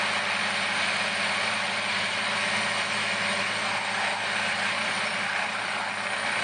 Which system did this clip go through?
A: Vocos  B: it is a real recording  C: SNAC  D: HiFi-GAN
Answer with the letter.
B